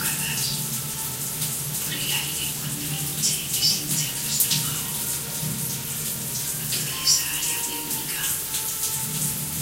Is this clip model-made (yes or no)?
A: no